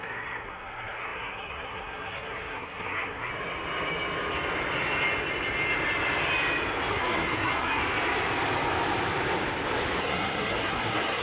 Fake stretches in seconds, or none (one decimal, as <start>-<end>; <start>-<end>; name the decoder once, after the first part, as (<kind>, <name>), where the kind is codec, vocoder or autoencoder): 0.0-3.3 (codec, SNAC); 6.9-7.8; 10.0-11.2